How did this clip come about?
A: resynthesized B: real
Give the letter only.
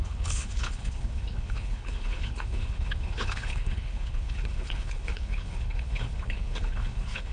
A